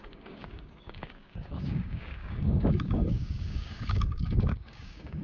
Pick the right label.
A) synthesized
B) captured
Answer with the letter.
A